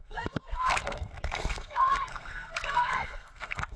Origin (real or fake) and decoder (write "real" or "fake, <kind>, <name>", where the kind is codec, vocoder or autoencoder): fake, codec, SNAC